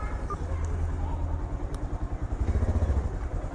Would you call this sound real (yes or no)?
yes